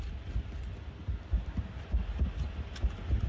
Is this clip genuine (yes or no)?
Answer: yes